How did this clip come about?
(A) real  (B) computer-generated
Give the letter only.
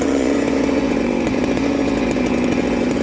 B